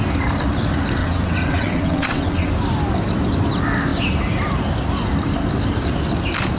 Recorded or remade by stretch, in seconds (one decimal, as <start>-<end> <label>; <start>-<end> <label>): 0.0-1.0 recorded; 1.0-2.5 remade; 2.5-6.6 recorded